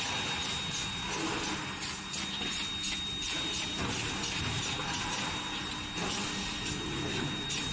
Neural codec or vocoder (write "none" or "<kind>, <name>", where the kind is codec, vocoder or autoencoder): none